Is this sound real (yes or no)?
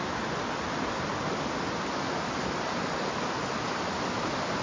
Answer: yes